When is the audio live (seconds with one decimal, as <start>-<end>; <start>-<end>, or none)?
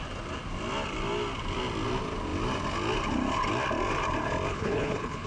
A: 0.0-4.5